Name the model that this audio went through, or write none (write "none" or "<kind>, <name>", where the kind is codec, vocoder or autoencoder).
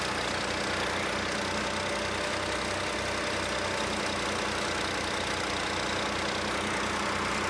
none